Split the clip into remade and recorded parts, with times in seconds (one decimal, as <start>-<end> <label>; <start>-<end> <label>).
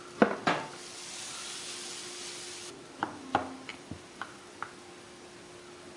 0.0-6.0 recorded